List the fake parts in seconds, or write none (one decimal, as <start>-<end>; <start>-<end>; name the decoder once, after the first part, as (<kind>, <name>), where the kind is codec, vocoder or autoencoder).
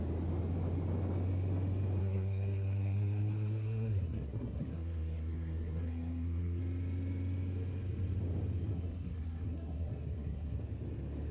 2.0-6.6 (codec, SNAC); 8.7-10.6